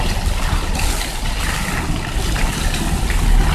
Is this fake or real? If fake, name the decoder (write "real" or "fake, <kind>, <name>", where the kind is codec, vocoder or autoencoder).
real